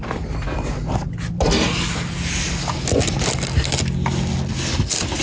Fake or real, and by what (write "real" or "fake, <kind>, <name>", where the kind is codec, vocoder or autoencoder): real